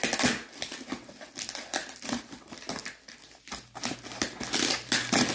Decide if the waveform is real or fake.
real